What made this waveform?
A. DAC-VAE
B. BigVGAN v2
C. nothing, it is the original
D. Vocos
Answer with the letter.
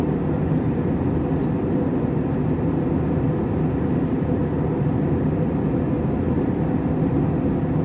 C